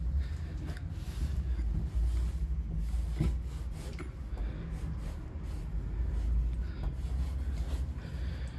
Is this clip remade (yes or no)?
no